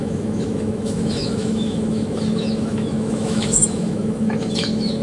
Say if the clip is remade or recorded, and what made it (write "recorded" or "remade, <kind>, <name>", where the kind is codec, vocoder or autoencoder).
remade, autoencoder, DAC-VAE